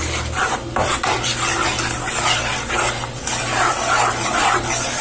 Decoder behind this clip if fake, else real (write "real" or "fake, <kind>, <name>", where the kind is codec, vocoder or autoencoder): real